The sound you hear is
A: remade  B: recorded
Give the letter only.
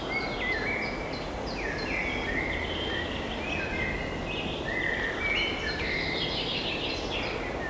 B